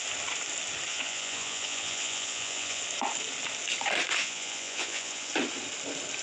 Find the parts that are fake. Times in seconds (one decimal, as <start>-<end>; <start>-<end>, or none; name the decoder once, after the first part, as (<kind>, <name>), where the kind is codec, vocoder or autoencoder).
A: 0.9-2.8 (vocoder, Vocos); 4.2-5.3

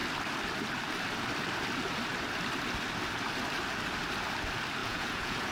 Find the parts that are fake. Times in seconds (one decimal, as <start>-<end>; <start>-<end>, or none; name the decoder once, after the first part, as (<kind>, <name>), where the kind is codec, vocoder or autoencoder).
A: 4.8-5.5 (vocoder, Vocos)

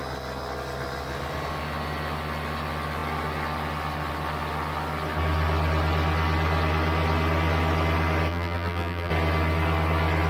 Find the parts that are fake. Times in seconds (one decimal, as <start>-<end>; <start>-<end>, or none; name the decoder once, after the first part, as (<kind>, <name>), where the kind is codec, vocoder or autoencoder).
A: 8.3-9.1 (vocoder, BigVGAN v2)

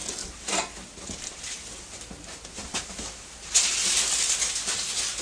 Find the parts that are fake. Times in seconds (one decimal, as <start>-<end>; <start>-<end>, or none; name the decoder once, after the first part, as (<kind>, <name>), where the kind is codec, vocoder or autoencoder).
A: 0.0-1.8 (vocoder, BigVGAN v2); 2.6-4.0